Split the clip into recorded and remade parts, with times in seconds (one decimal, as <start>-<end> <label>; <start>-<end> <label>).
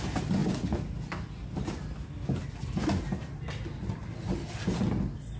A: 0.0-5.4 recorded